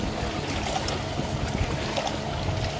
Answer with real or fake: real